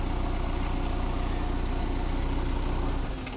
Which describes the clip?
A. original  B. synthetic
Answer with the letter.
A